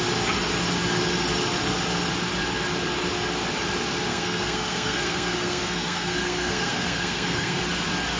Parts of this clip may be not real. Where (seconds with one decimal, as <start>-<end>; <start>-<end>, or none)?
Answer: 4.1-7.6

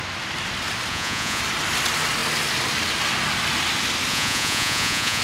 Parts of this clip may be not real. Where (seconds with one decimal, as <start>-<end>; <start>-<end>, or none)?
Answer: 0.9-1.4; 4.1-5.2

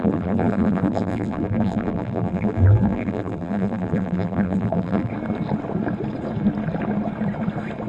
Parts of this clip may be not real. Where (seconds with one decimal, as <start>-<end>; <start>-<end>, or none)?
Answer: 0.0-5.1

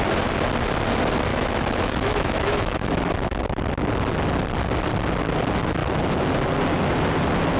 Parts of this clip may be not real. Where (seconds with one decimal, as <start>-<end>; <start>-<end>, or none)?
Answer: 1.3-2.9